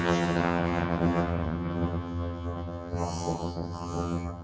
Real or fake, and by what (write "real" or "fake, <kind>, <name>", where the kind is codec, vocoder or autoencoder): fake, vocoder, HiFi-GAN